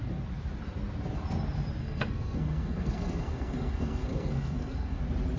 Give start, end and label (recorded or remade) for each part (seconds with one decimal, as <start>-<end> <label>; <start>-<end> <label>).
0.0-1.8 recorded; 1.8-5.0 remade; 5.0-5.4 recorded